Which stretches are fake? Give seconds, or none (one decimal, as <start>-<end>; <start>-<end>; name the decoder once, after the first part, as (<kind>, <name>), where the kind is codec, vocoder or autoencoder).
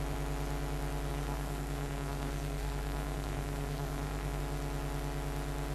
1.1-4.4 (codec, SNAC)